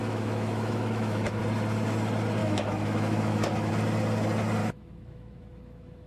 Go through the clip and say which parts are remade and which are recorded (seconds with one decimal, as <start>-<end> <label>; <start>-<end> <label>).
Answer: 0.0-1.4 remade; 1.4-2.4 recorded; 2.4-3.7 remade; 3.7-4.6 recorded; 4.6-6.1 remade